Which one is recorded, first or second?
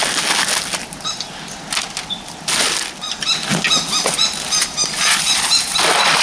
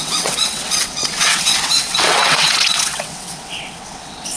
first